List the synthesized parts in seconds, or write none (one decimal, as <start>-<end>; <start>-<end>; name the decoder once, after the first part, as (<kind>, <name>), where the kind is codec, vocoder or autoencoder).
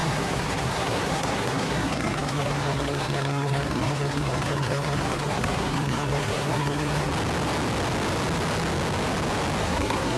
0.0-7.1 (codec, SNAC); 9.6-10.2